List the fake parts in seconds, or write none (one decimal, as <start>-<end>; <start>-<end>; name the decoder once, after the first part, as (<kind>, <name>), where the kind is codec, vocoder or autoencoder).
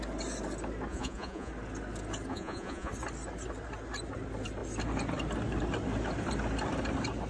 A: 0.9-1.5 (vocoder, Vocos); 2.3-2.9